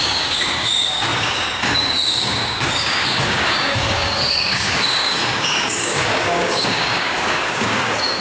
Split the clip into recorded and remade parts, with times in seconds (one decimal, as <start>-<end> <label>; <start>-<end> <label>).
0.0-8.2 remade

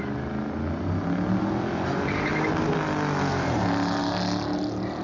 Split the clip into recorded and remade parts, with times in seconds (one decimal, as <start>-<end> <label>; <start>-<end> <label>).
0.0-5.0 recorded

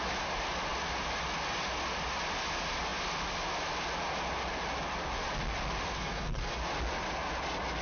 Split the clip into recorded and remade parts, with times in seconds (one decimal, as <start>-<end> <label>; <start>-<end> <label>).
0.0-5.9 recorded; 5.9-6.6 remade; 6.6-7.8 recorded

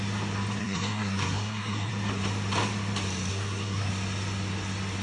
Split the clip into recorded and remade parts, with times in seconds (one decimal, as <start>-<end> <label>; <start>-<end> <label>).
0.0-0.6 recorded; 0.6-1.9 remade; 1.9-3.3 recorded; 3.3-3.9 remade; 3.9-5.0 recorded

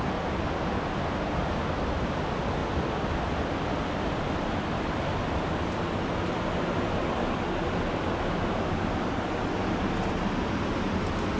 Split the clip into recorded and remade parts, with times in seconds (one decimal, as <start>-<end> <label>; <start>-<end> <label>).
0.0-11.4 recorded